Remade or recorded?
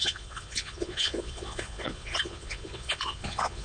remade